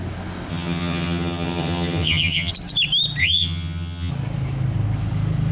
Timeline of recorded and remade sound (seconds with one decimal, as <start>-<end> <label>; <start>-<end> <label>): 0.0-0.5 recorded; 0.5-2.5 remade; 2.5-3.2 recorded; 3.2-4.1 remade; 4.1-5.5 recorded